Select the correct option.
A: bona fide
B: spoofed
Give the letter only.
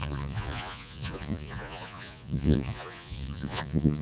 B